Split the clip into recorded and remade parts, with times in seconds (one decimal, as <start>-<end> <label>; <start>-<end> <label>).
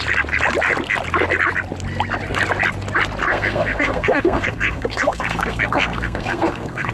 0.0-3.3 recorded; 3.3-6.9 remade